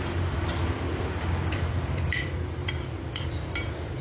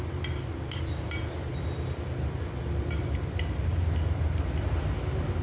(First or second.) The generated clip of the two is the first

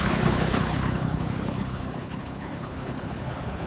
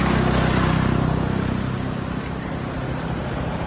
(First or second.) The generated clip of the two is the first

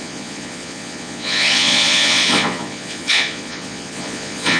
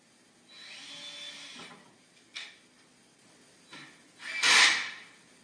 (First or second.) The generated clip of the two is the first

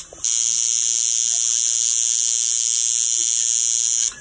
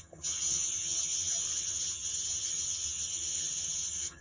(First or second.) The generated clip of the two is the second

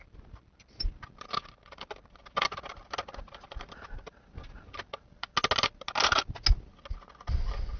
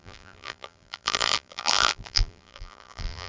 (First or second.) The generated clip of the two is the second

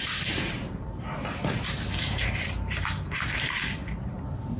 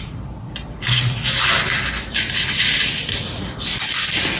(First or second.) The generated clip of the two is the first